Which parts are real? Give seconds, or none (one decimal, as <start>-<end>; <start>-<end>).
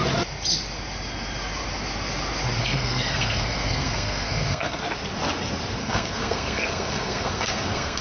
0.0-2.6; 4.8-5.8